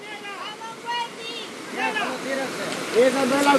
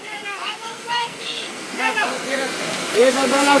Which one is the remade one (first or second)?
second